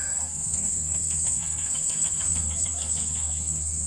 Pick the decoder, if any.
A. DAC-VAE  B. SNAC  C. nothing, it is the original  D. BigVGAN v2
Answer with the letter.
B